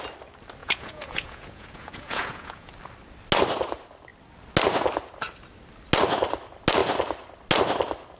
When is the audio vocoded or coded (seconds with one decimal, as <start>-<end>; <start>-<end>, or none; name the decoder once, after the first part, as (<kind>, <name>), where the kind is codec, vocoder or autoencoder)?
0.6-2.7 (vocoder, Vocos)